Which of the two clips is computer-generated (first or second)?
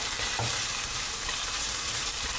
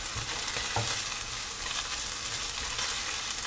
first